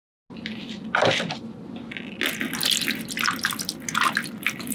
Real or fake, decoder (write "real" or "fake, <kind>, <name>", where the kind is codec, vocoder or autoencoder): real